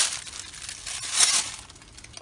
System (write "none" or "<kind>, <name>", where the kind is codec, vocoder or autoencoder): none